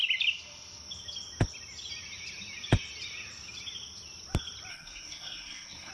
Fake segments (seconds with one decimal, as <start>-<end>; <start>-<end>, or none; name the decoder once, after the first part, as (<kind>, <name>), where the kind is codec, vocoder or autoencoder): 4.7-5.9 (codec, SNAC)